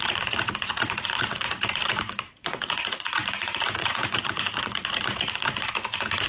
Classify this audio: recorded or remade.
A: remade